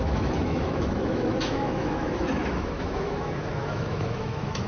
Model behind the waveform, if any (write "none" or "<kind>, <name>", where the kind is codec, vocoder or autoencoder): autoencoder, DAC-VAE